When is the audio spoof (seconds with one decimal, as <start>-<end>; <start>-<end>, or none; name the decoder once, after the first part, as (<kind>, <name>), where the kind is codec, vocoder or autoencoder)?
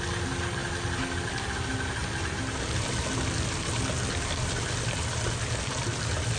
none